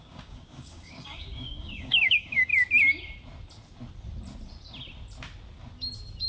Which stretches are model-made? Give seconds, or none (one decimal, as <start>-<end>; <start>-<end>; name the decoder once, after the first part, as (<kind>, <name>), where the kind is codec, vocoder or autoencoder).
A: 0.0-2.5 (codec, DAC)